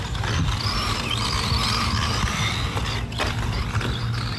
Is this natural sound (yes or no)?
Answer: yes